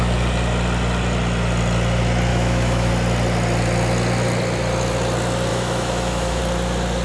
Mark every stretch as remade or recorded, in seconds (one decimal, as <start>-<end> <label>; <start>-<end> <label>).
0.0-2.3 recorded; 2.3-2.9 remade; 2.9-5.5 recorded; 5.5-6.4 remade; 6.4-7.0 recorded